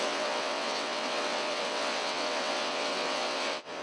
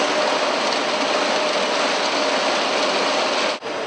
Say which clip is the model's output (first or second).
first